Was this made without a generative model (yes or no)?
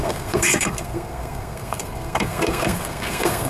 no